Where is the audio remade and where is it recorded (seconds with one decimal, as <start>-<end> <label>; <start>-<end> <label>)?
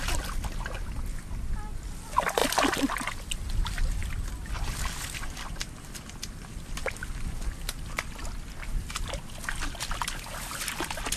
0.0-11.2 recorded